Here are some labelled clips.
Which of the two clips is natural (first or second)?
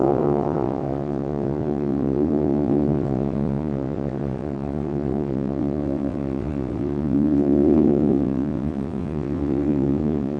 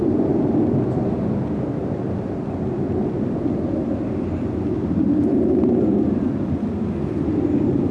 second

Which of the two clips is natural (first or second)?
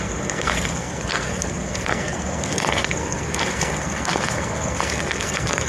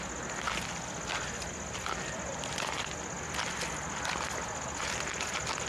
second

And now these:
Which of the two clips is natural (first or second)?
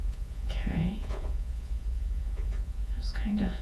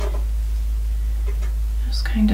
second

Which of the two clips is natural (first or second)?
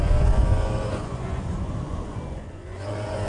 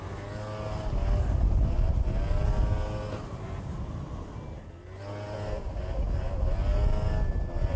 second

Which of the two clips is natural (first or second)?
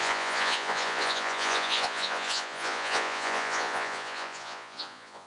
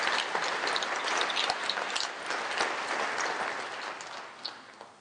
second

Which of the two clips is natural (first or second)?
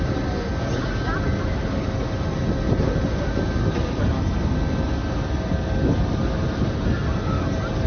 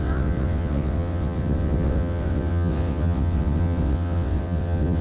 first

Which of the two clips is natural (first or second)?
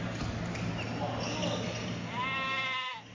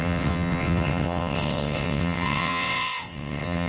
first